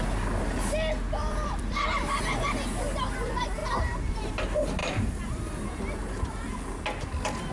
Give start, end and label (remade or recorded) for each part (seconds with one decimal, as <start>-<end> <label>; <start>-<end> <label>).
0.0-1.2 recorded; 1.2-2.2 remade; 2.2-4.8 recorded; 4.8-5.8 remade; 5.8-7.5 recorded